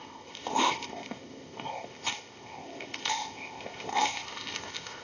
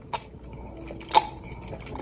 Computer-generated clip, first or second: first